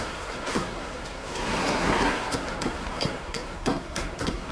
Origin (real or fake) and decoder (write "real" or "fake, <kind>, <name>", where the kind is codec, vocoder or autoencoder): fake, codec, SNAC